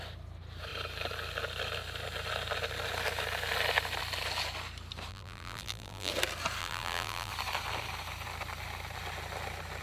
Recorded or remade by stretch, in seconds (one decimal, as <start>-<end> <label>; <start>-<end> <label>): 0.0-5.1 recorded; 5.1-6.1 remade; 6.1-6.6 recorded; 6.6-7.3 remade; 7.3-9.8 recorded

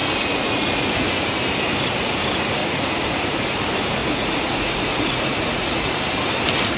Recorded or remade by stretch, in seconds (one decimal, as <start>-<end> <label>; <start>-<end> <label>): 0.0-1.4 remade; 1.4-2.6 recorded; 2.6-3.6 remade; 3.6-4.0 recorded; 4.0-6.0 remade; 6.0-6.8 recorded

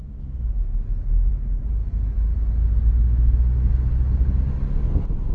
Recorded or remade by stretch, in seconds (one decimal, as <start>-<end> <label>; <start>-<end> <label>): 0.0-5.3 recorded

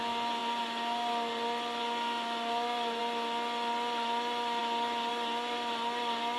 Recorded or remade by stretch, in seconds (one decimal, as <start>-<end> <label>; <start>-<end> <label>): 0.0-6.4 recorded

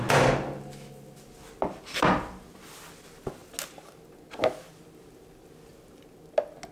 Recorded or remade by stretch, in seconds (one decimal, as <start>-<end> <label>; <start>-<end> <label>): 0.0-6.7 recorded

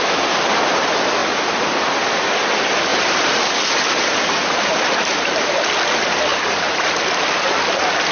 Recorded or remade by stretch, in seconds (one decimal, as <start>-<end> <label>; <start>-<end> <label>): 0.0-2.9 recorded; 2.9-5.6 remade; 5.6-6.3 recorded; 6.3-6.9 remade; 6.9-8.1 recorded